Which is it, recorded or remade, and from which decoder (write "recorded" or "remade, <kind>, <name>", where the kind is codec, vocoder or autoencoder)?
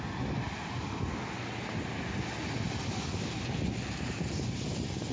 recorded